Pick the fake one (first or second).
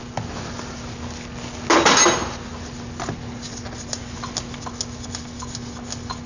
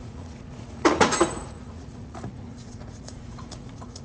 second